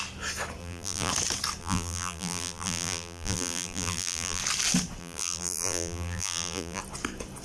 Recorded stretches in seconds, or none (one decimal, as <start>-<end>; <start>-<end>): 0.0-0.6; 1.1-1.6; 4.4-5.0; 6.8-7.4